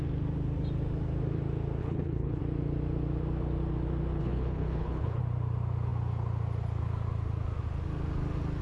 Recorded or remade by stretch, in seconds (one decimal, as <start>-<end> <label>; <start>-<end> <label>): 0.0-1.8 recorded; 1.8-2.4 remade; 2.4-4.2 recorded; 4.2-5.2 remade; 5.2-8.6 recorded